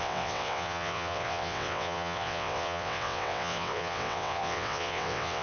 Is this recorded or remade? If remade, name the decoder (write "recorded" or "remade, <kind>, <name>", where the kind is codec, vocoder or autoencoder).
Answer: remade, vocoder, WaveNeXt